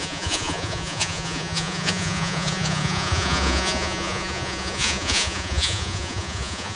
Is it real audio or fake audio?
fake